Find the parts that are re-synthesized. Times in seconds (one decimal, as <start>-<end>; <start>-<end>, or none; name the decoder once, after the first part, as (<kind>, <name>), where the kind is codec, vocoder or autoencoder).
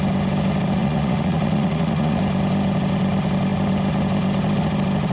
0.8-2.2 (vocoder, Vocos)